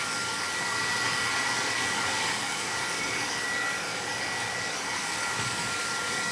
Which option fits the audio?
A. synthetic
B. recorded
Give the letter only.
A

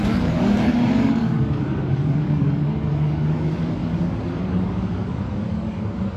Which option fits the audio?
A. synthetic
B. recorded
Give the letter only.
A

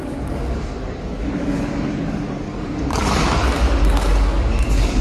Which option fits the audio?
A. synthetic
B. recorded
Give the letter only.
A